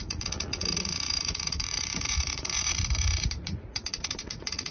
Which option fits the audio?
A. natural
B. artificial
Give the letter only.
B